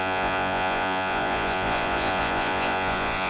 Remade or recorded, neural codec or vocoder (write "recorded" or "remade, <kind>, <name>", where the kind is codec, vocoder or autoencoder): remade, vocoder, Vocos